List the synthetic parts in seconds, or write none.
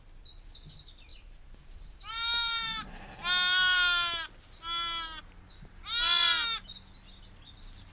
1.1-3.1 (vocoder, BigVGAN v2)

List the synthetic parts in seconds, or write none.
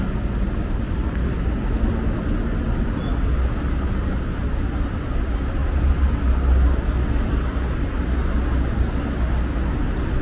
none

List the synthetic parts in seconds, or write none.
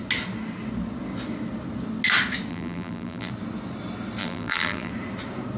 2.5-3.3 (vocoder, BigVGAN v2); 4.2-4.9